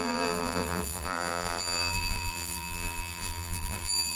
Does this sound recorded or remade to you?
remade